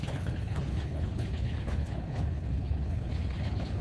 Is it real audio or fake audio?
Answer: fake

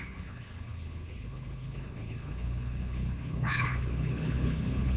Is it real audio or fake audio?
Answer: fake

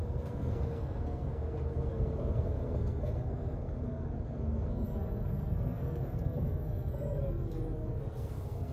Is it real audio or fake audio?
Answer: fake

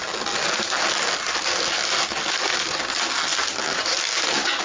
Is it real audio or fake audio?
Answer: real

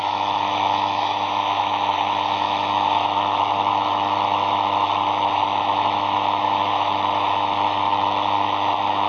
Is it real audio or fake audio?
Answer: fake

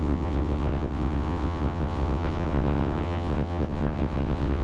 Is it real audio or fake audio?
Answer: fake